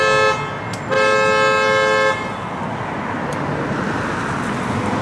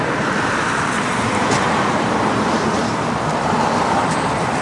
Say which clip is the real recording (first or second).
first